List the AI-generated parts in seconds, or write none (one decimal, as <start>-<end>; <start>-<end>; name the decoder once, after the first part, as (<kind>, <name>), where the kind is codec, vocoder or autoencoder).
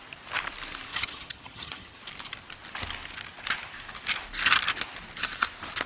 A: 0.9-2.0 (vocoder, HiFi-GAN)